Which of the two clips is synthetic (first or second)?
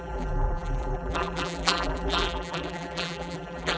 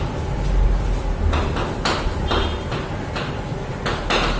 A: first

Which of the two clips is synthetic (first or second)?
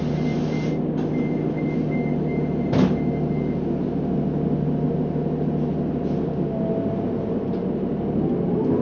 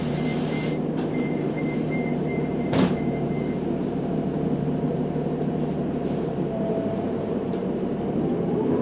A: second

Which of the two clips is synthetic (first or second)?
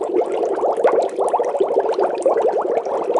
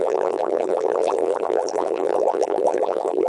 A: second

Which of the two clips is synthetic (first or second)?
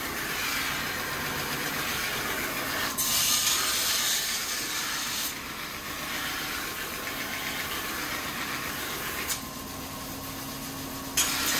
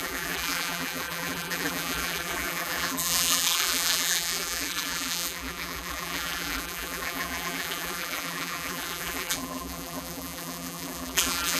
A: second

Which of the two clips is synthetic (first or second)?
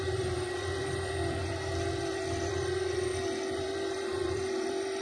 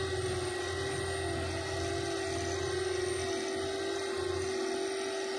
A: first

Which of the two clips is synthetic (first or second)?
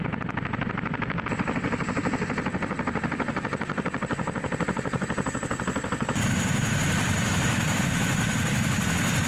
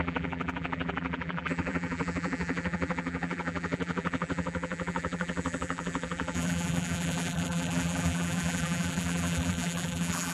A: second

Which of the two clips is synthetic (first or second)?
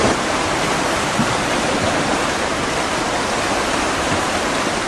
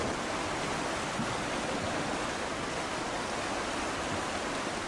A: first